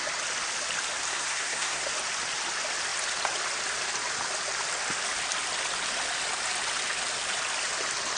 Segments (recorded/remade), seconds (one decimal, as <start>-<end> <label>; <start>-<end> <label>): 0.0-1.1 recorded; 1.1-1.9 remade; 1.9-8.2 recorded